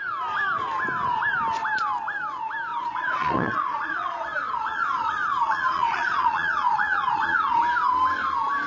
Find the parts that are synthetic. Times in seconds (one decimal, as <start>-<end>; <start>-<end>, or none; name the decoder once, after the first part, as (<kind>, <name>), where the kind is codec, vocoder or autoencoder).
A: 2.7-7.6 (vocoder, Vocos)